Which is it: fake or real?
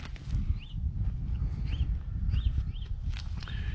real